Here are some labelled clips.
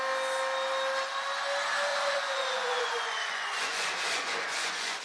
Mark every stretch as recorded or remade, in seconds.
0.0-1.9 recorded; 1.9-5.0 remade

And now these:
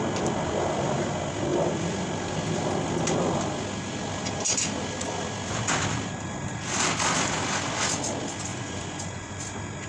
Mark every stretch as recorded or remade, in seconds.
0.0-8.5 recorded; 8.5-9.3 remade; 9.3-9.9 recorded

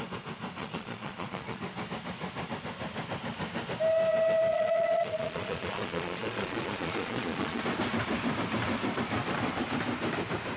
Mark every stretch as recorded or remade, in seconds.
0.0-0.6 recorded; 0.6-1.6 remade; 1.6-4.5 recorded; 4.5-7.6 remade; 7.6-10.6 recorded

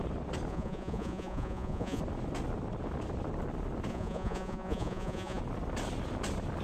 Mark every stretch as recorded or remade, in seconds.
0.0-0.5 recorded; 0.5-2.0 remade; 2.0-3.9 recorded; 3.9-5.4 remade; 5.4-6.6 recorded

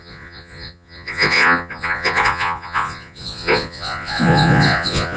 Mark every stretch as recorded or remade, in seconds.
0.0-5.2 remade

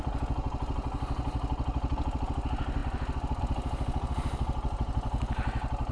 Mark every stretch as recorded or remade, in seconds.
0.0-5.9 recorded

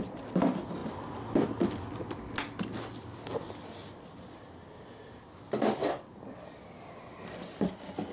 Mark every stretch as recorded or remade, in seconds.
0.0-8.1 recorded